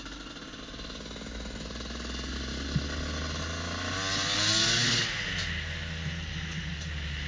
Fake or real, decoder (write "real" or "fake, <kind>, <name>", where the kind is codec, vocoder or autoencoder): real